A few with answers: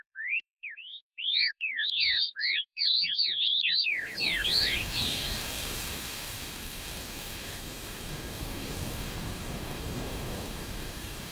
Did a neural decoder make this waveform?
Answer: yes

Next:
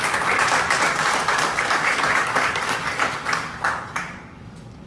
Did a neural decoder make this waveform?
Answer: yes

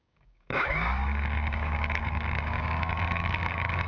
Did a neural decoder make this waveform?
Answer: yes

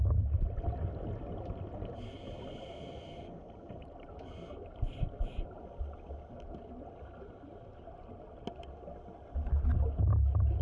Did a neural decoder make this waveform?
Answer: no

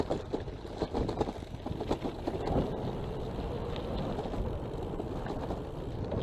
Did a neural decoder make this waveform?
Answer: no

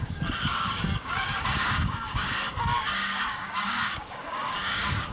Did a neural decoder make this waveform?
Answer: yes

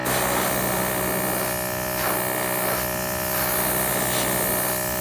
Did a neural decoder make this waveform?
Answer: no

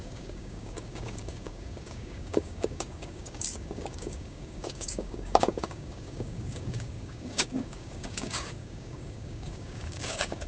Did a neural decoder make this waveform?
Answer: yes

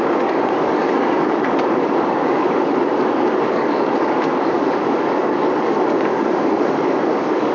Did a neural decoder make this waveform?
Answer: yes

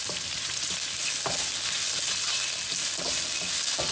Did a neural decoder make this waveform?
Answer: no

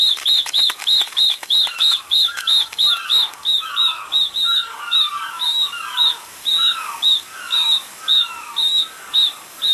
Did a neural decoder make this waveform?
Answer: yes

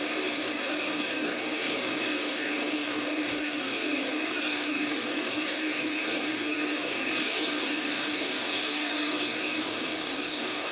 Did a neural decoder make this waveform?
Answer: yes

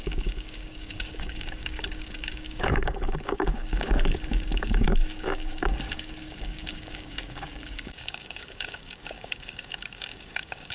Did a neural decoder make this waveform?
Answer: yes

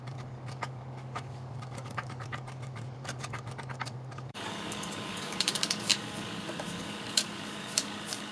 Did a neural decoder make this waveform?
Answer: yes